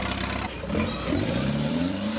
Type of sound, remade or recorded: remade